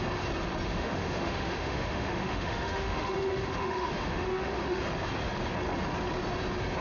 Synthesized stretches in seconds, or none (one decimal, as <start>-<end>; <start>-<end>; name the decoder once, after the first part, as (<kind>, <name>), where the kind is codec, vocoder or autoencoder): 0.7-4.8 (autoencoder, DAC-VAE)